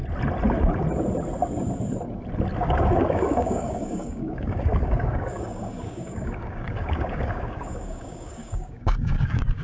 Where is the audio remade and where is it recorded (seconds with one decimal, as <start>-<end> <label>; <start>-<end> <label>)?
0.0-2.6 recorded; 2.6-9.6 remade